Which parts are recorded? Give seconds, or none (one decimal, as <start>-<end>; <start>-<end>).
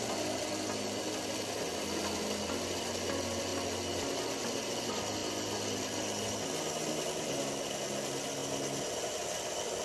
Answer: 0.0-9.8